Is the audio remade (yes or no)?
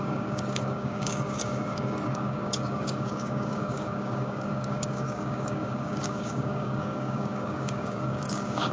yes